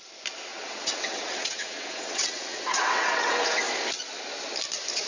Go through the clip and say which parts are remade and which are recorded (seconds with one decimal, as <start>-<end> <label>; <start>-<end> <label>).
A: 0.0-0.5 recorded; 0.5-3.6 remade; 3.6-5.1 recorded

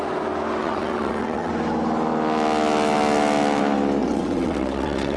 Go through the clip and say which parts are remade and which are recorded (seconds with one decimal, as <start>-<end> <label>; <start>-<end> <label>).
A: 0.0-0.6 recorded; 0.6-1.5 remade; 1.5-4.0 recorded; 4.0-5.2 remade

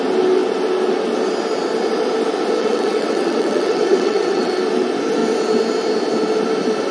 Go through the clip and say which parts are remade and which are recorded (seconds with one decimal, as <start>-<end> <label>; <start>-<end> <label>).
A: 0.0-2.6 recorded; 2.6-4.5 remade; 4.5-6.9 recorded

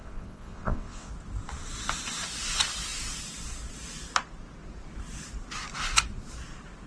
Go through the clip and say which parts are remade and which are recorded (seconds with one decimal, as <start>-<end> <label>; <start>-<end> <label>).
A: 0.0-1.1 remade; 1.1-6.9 recorded

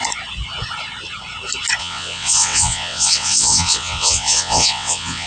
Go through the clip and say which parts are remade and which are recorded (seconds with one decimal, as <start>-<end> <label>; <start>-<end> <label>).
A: 0.0-1.8 recorded; 1.8-5.3 remade

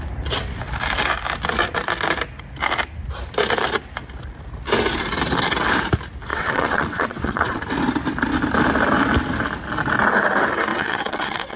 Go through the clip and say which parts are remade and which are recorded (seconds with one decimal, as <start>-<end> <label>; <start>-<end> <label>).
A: 0.0-6.3 recorded; 6.3-7.6 remade; 7.6-10.7 recorded; 10.7-11.6 remade

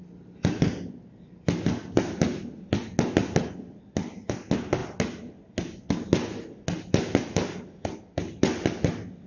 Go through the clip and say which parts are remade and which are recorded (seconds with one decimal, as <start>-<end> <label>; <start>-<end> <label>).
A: 0.0-9.3 recorded

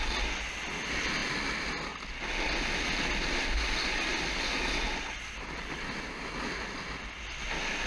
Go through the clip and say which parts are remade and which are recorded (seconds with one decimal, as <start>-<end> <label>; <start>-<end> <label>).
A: 0.0-7.9 recorded